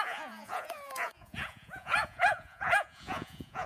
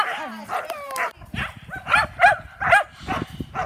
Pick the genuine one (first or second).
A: second